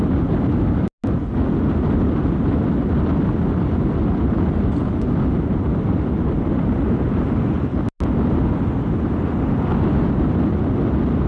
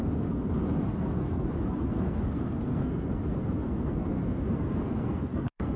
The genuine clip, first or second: first